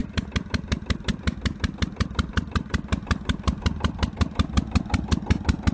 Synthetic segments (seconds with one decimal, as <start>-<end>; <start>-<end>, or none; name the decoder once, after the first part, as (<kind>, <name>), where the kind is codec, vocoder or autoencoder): none